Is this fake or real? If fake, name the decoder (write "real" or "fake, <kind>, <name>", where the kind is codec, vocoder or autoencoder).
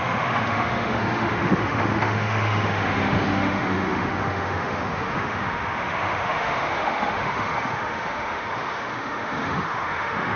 fake, autoencoder, DAC-VAE